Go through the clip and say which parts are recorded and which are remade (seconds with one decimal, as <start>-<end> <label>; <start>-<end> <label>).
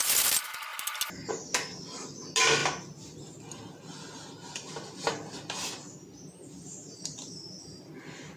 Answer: 0.0-8.4 recorded